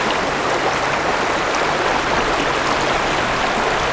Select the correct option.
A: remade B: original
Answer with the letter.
B